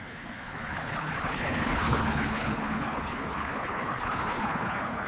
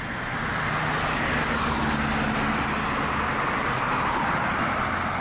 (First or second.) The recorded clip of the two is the second